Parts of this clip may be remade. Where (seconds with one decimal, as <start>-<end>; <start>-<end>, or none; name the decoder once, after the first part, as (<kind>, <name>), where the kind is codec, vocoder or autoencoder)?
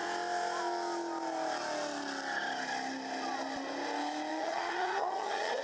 4.3-5.6 (vocoder, HiFi-GAN)